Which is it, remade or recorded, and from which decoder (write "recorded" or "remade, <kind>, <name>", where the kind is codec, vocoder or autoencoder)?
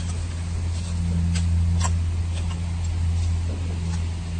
recorded